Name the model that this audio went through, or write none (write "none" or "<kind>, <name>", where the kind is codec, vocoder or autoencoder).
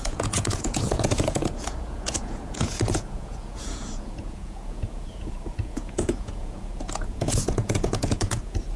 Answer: vocoder, Vocos